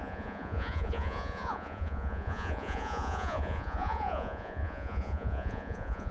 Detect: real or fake fake